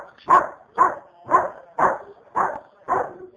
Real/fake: real